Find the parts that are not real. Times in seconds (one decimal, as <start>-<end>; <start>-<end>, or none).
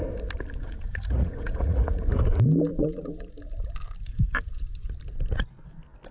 0.6-2.0; 2.7-3.3; 4.1-4.9